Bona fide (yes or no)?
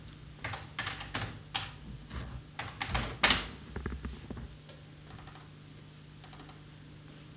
yes